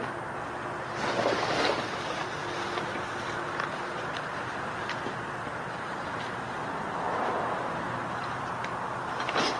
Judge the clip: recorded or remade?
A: recorded